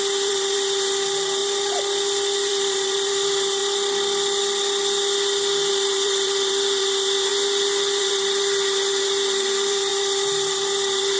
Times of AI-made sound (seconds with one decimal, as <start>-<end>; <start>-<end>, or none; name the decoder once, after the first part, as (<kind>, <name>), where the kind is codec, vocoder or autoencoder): 0.0-1.4 (vocoder, BigVGAN v2); 2.5-3.6; 5.7-7.3; 8.0-11.2